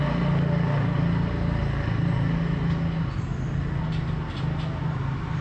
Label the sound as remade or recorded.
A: recorded